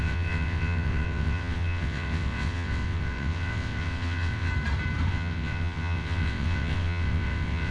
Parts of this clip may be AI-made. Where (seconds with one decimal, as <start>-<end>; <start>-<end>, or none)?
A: 0.0-4.5; 5.1-7.7